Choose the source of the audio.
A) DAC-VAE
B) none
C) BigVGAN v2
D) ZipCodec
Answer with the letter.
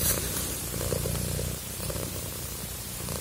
C